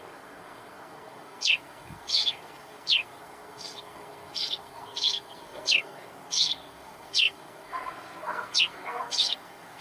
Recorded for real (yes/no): no